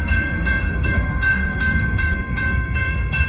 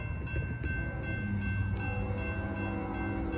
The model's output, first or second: first